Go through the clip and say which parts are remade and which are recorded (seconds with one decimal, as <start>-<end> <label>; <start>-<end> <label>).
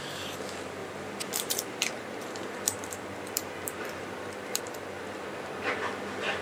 0.0-0.8 recorded; 0.8-4.6 remade; 4.6-6.4 recorded